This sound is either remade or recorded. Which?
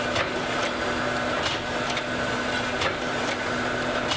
recorded